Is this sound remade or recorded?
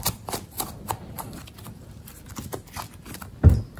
remade